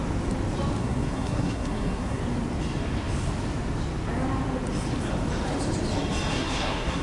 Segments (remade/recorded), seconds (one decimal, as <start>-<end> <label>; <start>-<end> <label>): 0.0-0.8 recorded; 0.8-2.2 remade; 2.2-6.3 recorded; 6.3-7.0 remade